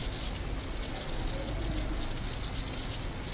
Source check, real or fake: real